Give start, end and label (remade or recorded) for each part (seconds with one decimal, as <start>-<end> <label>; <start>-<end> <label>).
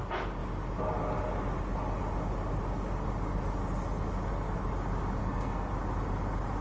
0.0-5.2 recorded; 5.2-5.7 remade; 5.7-6.6 recorded